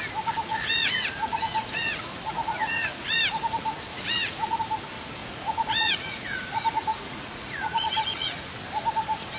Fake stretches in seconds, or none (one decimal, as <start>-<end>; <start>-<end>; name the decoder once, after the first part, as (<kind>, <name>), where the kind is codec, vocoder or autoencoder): 0.5-3.2 (vocoder, Vocos); 3.9-4.6; 5.2-8.5